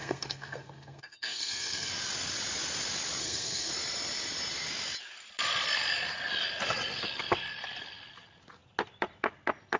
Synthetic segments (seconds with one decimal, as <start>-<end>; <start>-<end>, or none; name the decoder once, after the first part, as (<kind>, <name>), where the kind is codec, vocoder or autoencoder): 0.0-1.9 (codec, SNAC); 3.2-3.7